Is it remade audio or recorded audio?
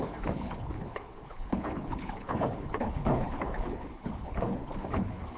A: remade